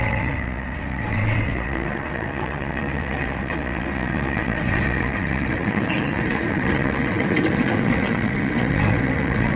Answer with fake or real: fake